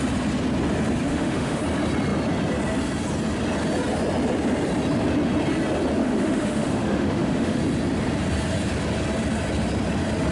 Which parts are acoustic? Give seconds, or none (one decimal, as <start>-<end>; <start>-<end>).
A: 0.0-1.1; 1.6-6.0; 7.6-10.3